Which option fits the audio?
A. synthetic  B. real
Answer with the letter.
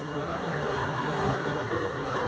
A